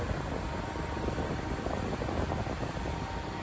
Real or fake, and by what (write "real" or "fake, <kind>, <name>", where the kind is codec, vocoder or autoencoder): real